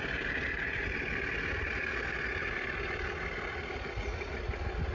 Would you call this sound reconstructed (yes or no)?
no